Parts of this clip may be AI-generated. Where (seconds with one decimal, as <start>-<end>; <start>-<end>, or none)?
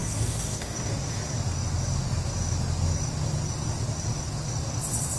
0.0-0.8